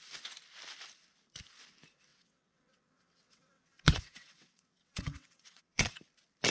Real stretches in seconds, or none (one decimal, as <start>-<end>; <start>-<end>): 0.0-2.1; 6.0-6.5